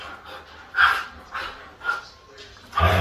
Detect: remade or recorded recorded